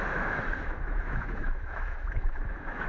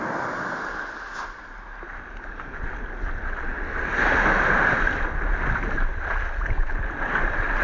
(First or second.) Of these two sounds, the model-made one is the first